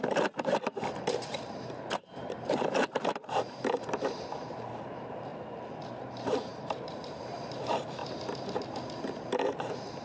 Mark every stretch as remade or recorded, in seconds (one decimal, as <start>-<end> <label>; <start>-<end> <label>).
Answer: 0.0-5.3 remade; 5.3-5.8 recorded; 5.8-8.0 remade; 8.0-9.2 recorded; 9.2-10.0 remade